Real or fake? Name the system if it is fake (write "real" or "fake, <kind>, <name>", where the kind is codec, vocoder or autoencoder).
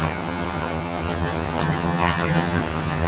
fake, vocoder, HiFi-GAN